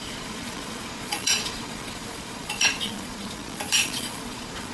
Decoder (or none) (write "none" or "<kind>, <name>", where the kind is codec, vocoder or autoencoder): vocoder, Vocos